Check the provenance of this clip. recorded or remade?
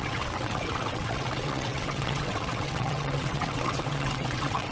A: remade